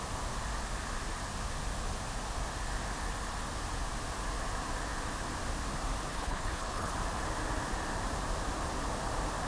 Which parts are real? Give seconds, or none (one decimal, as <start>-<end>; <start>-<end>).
0.0-6.1; 6.9-9.5